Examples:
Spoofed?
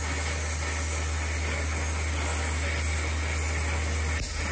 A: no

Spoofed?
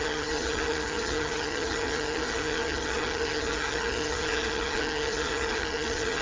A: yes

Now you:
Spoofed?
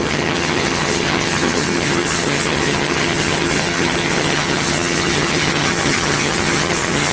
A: yes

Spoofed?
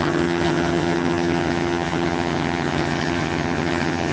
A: yes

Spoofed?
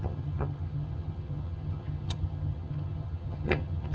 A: yes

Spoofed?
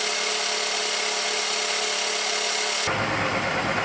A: no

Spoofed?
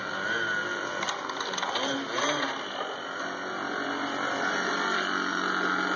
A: no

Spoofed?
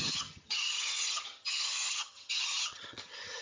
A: yes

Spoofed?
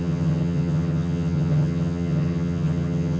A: yes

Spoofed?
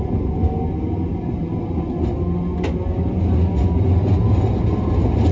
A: no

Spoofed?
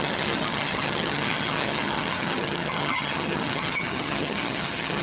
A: yes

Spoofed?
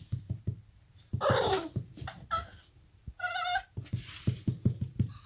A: no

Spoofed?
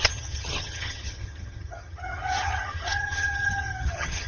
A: yes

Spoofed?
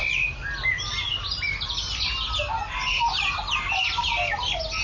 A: no